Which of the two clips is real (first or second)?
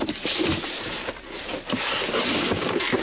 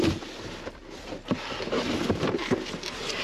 second